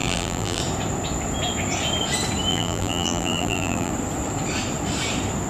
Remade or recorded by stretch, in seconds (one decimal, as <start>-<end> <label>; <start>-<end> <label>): 0.0-0.6 remade; 0.6-2.5 recorded; 2.5-3.9 remade; 3.9-5.5 recorded